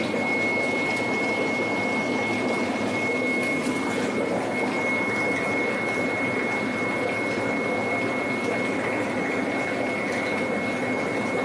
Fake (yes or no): no